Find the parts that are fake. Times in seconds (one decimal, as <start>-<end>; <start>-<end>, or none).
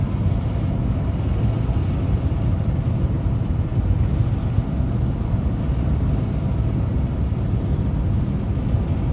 none